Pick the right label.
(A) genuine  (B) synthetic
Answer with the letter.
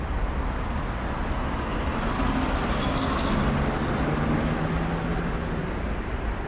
A